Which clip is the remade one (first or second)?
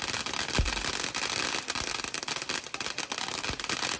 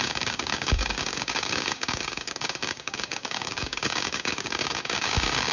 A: second